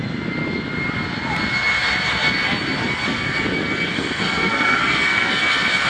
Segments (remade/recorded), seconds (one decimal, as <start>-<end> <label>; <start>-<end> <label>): 0.0-3.9 recorded; 3.9-5.3 remade; 5.3-5.9 recorded